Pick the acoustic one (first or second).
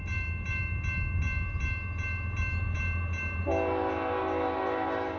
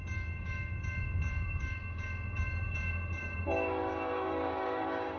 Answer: first